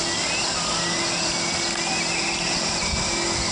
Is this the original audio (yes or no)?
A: yes